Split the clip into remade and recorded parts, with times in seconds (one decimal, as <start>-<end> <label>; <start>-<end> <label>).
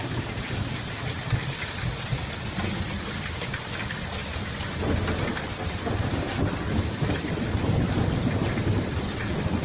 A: 0.0-9.6 recorded